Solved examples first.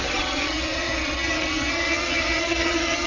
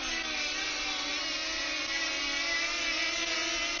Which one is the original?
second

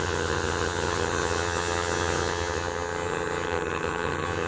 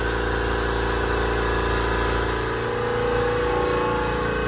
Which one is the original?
second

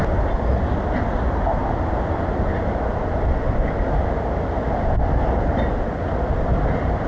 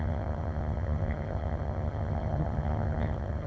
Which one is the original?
first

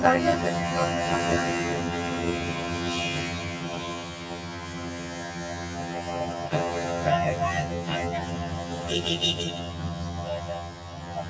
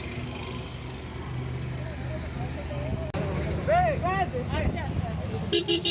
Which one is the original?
second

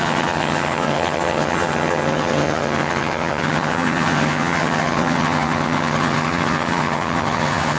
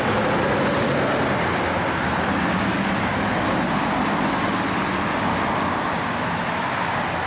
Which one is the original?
second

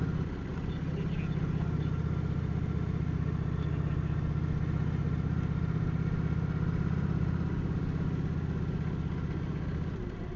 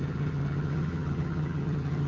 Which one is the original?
first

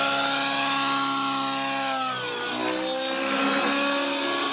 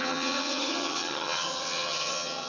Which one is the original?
first